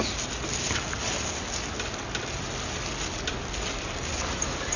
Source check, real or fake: real